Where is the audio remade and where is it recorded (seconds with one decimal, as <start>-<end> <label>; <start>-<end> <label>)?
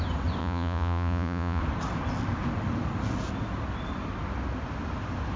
0.0-0.4 recorded; 0.4-1.6 remade; 1.6-5.4 recorded